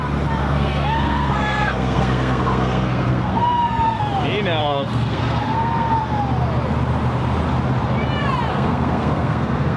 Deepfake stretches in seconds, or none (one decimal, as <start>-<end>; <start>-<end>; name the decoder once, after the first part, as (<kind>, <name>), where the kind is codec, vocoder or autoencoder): 0.4-4.0 (codec, SNAC); 4.6-6.0; 8.5-9.8